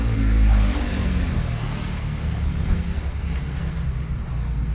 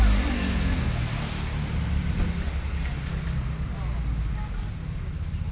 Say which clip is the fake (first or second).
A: first